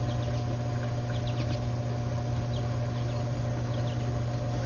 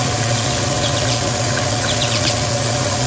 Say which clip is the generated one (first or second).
second